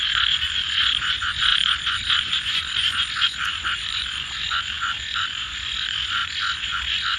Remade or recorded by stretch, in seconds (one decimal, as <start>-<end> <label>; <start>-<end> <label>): 0.0-7.2 remade